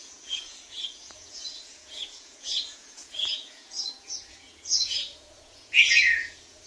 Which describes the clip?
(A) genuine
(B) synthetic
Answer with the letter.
B